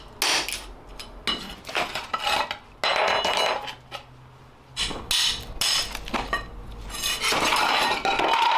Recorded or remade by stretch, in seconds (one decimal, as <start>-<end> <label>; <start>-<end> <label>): 0.0-8.6 recorded